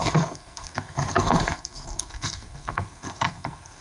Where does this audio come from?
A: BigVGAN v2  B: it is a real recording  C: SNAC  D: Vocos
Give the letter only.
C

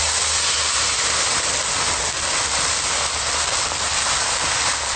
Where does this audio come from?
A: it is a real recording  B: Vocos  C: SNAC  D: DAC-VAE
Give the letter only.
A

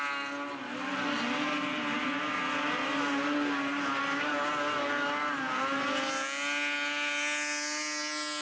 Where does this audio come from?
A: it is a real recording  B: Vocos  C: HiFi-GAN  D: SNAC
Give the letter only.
A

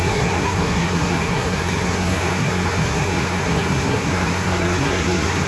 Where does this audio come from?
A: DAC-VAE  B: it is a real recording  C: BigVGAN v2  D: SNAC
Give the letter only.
D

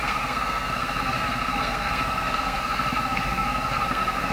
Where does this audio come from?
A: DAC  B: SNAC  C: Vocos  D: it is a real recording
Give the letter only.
B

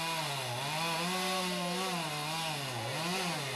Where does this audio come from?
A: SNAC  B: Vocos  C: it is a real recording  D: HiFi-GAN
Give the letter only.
C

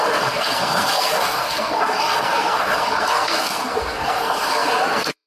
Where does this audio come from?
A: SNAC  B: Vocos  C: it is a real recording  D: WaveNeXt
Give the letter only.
A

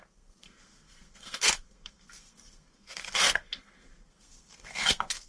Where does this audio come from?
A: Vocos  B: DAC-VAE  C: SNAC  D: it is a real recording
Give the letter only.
C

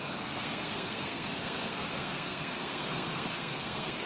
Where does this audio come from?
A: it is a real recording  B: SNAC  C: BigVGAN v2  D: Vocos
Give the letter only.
B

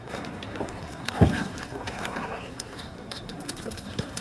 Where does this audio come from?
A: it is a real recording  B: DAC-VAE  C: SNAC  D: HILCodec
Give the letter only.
C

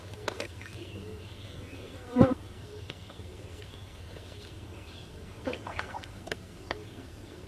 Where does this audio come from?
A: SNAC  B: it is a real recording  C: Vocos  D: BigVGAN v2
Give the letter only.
A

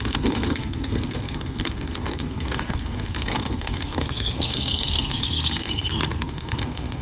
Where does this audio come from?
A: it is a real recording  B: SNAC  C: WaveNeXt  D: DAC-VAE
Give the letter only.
B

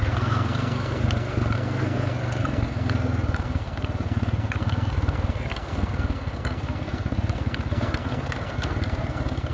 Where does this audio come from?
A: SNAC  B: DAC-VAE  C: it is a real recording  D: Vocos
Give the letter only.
A